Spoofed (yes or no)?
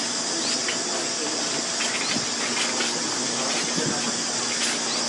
no